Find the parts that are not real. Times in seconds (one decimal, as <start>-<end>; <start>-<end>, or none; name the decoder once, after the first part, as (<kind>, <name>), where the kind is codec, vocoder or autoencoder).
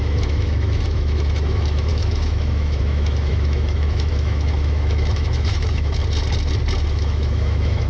0.0-6.0 (autoencoder, DAC-VAE); 6.9-7.9